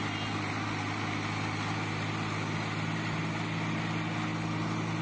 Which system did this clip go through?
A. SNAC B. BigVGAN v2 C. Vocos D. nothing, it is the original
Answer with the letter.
D